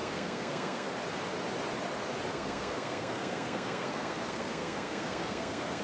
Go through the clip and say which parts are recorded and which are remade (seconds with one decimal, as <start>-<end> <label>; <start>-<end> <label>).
0.0-0.9 remade; 0.9-2.3 recorded; 2.3-5.8 remade